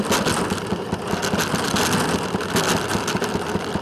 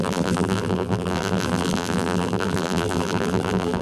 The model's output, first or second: second